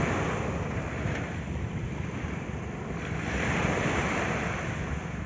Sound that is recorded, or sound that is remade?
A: recorded